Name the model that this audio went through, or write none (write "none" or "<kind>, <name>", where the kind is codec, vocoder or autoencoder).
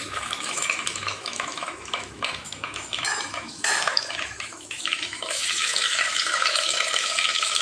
autoencoder, DAC-VAE